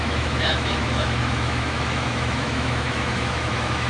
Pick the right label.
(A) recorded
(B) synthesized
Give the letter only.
B